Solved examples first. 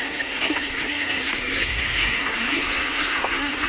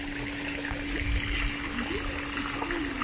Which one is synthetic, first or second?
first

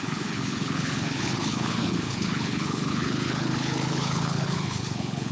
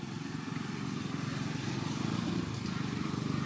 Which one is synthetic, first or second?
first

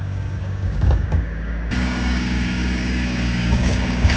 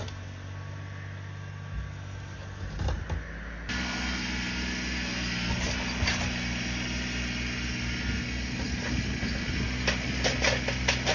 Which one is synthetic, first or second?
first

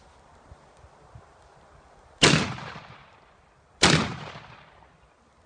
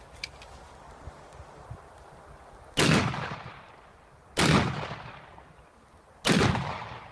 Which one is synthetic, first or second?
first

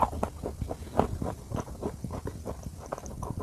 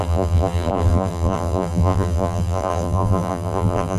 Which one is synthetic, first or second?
second